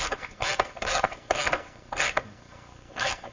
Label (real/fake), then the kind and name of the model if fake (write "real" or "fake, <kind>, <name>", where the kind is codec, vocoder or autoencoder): fake, codec, SNAC